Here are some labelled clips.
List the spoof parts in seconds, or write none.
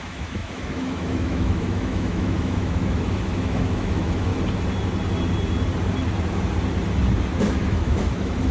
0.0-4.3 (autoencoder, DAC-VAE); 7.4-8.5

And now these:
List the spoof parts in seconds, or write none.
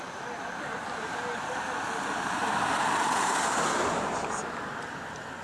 2.4-4.4 (vocoder, BigVGAN v2)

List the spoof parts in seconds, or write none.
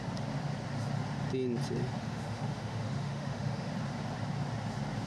2.0-3.7 (autoencoder, DAC-VAE)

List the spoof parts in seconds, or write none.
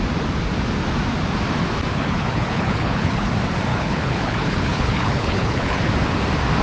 1.9-3.3 (codec, HILCodec); 3.7-5.9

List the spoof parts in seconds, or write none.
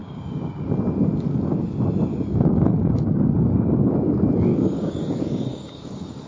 0.0-0.7 (codec, DAC); 2.1-3.9; 4.5-6.3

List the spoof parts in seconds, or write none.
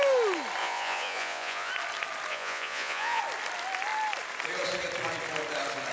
0.6-1.7 (vocoder, Vocos); 2.3-3.2